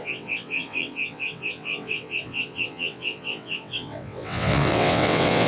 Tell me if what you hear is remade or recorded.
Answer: remade